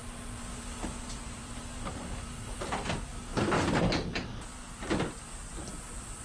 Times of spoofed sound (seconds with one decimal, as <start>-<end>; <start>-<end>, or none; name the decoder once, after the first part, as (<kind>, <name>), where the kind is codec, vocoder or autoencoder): 1.0-3.1 (vocoder, BigVGAN v2); 3.8-6.2